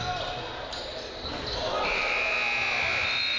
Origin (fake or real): real